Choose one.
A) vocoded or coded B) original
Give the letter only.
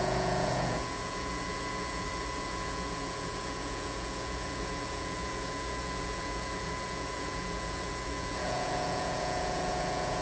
A